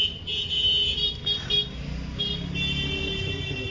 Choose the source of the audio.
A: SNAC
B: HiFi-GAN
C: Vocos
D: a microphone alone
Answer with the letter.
D